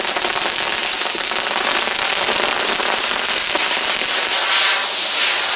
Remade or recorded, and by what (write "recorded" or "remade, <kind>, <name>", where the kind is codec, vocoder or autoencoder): recorded